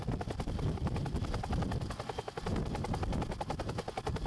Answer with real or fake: fake